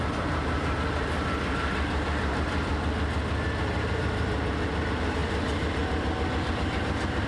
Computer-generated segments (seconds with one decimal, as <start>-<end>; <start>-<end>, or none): 0.0-2.7; 4.0-5.2; 6.5-7.3